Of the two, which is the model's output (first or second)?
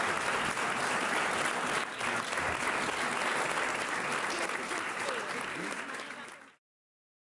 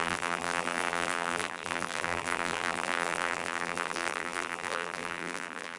second